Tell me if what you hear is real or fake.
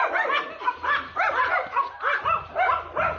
real